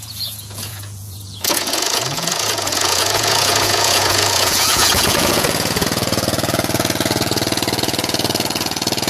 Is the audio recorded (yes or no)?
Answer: no